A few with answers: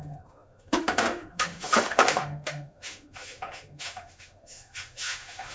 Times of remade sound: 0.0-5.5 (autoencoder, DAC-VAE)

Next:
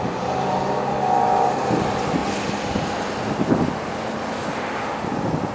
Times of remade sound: none

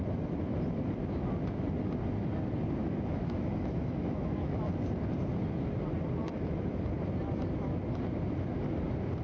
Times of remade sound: 2.8-4.7 (autoencoder, DAC-VAE); 6.2-6.8